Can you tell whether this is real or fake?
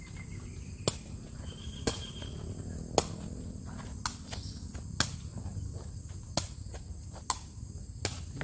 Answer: real